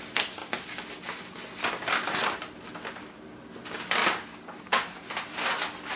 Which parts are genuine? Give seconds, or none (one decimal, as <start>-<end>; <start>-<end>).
0.0-4.0; 4.9-6.0